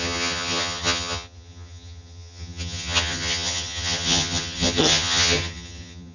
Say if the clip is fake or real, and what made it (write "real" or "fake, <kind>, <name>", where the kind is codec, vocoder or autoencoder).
fake, vocoder, HiFi-GAN